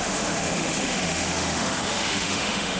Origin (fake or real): fake